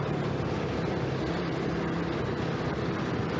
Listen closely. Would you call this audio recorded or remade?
recorded